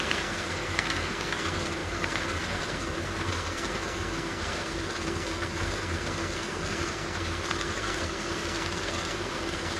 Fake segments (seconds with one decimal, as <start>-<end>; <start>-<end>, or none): 0.0-9.8